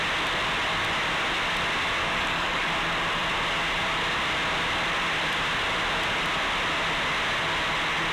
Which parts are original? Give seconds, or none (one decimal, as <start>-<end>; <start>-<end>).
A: 0.0-2.0; 2.7-8.1